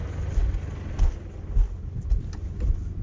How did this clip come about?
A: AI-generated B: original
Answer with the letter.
B